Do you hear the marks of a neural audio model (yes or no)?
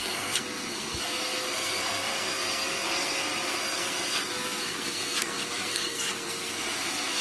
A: yes